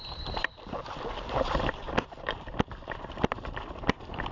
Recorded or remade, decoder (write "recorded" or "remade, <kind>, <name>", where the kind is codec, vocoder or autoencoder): recorded